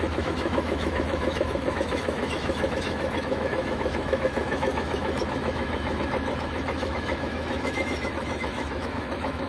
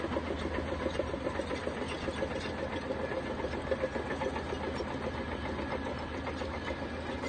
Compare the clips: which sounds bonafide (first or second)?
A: second